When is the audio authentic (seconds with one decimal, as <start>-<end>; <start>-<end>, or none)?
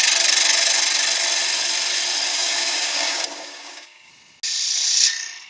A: 0.0-2.3; 4.1-5.5